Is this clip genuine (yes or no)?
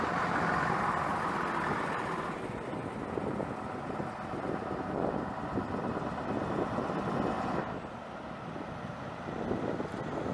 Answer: yes